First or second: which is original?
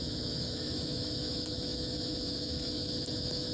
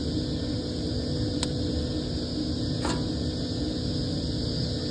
second